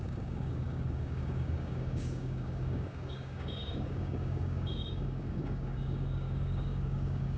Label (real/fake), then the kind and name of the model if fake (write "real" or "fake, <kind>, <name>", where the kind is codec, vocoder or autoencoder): fake, codec, DAC